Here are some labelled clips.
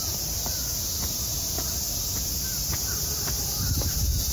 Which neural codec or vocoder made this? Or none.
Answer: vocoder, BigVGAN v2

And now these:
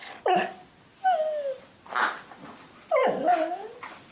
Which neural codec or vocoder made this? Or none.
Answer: none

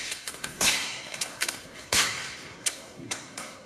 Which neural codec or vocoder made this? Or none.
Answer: codec, SNAC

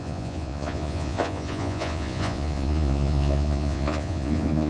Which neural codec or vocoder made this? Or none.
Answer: vocoder, Vocos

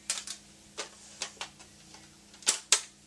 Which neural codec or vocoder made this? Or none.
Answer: none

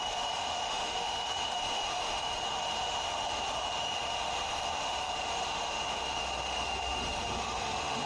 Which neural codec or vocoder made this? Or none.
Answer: autoencoder, DAC-VAE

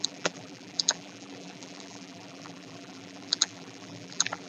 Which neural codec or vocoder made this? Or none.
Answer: vocoder, BigVGAN v2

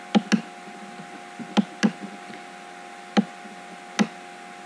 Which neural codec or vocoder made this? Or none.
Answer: none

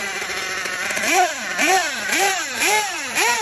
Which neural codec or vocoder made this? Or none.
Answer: vocoder, BigVGAN v2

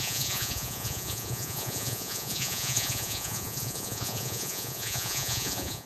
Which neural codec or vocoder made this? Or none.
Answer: vocoder, Vocos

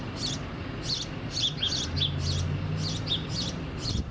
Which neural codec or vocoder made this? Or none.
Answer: none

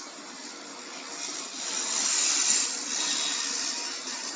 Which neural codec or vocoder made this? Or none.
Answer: none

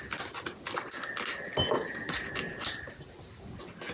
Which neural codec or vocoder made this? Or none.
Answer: none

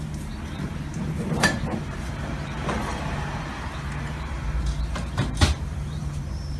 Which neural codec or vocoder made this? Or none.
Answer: vocoder, BigVGAN v2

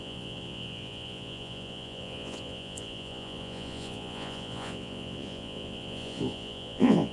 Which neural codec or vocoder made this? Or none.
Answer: vocoder, Vocos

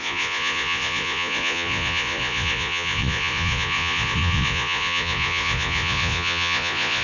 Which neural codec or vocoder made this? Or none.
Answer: vocoder, Vocos